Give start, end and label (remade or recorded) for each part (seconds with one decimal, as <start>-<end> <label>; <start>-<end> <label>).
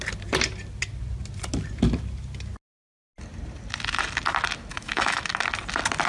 0.0-4.7 recorded; 4.7-5.3 remade; 5.3-6.1 recorded